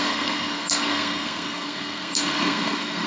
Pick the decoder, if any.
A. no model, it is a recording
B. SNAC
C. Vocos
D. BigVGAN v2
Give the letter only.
B